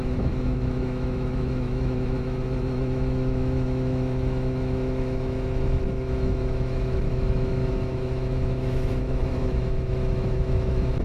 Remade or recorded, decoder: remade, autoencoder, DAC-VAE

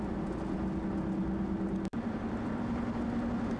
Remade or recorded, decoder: recorded